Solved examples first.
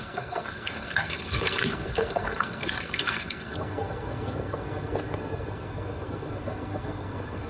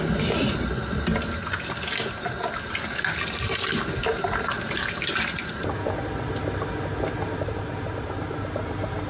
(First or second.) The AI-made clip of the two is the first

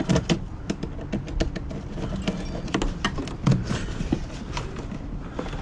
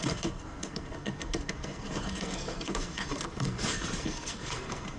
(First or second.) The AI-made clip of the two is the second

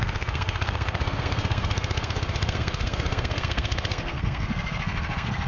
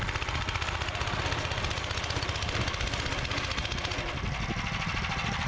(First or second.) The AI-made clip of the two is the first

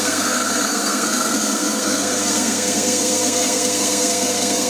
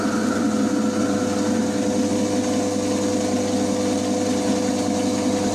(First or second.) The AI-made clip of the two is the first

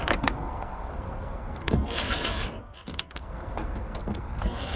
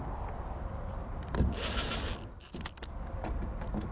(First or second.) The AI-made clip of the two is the first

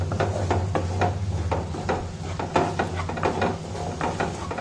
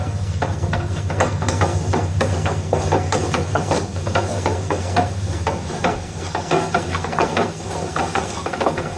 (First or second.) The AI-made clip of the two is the second